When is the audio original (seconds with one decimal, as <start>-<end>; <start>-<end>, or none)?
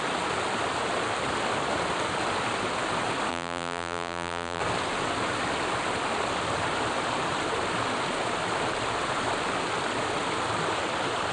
0.0-3.3; 4.6-11.3